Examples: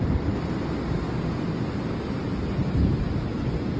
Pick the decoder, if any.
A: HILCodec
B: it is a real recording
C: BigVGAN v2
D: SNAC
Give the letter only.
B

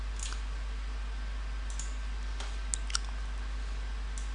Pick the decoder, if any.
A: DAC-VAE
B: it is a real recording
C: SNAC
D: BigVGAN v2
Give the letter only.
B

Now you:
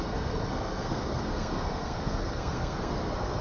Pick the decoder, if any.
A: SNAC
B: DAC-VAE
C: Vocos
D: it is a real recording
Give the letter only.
A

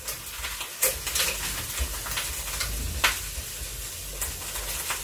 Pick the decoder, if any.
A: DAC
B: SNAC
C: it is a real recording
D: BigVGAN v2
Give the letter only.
C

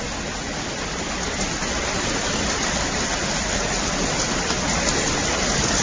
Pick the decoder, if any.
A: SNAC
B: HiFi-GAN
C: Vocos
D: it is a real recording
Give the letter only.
D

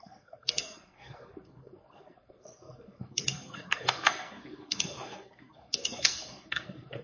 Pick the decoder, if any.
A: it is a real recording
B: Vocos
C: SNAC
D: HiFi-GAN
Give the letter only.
C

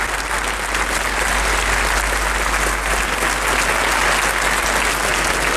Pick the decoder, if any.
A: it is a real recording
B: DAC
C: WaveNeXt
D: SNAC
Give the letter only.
A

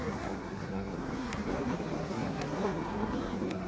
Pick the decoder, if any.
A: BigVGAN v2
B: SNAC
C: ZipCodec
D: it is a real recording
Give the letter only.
B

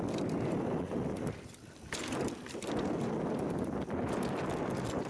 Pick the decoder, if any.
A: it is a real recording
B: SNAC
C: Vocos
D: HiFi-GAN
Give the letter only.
A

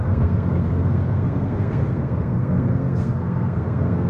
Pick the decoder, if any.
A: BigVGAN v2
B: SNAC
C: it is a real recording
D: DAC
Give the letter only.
B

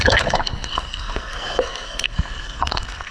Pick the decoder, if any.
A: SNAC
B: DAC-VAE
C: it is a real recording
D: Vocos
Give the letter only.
A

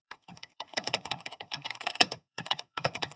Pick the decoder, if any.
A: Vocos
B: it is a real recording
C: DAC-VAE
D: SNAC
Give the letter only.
D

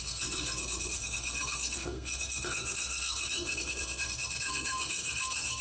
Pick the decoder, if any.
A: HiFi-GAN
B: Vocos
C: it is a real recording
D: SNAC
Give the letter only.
D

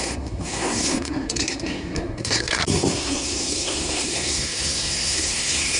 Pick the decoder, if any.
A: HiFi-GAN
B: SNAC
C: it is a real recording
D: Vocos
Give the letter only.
B